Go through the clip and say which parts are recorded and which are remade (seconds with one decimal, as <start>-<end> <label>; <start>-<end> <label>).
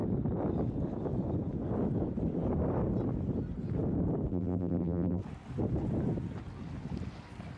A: 0.0-4.3 recorded; 4.3-5.2 remade; 5.2-7.6 recorded